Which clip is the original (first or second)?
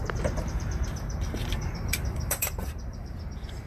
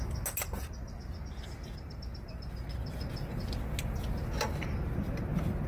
second